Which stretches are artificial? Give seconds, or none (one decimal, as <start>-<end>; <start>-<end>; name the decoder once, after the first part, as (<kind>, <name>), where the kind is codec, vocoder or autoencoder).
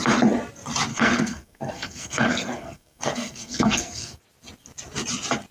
0.9-4.2 (codec, SNAC)